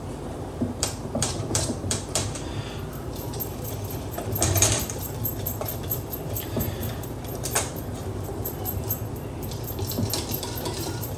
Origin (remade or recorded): remade